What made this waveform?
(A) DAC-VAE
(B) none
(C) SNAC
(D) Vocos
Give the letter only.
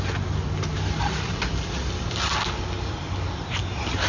B